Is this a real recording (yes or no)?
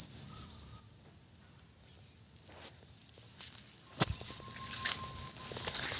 yes